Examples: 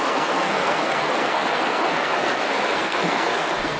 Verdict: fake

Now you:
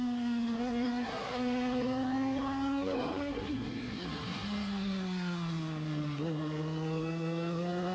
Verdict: fake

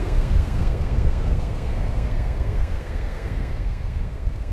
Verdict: fake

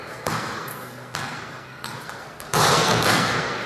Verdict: fake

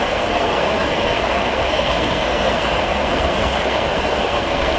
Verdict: fake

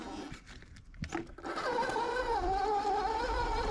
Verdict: real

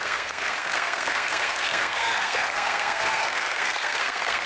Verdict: fake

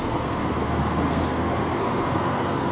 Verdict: fake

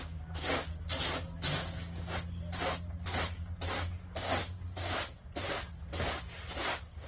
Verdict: real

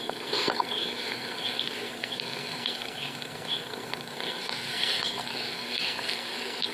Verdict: fake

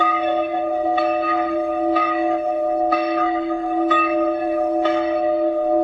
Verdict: fake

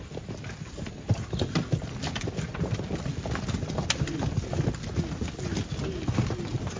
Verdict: real